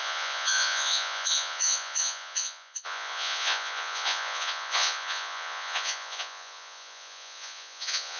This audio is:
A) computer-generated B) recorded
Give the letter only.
A